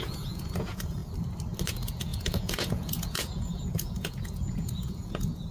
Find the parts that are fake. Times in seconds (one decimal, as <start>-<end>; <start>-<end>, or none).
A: 0.0-1.0; 1.7-5.5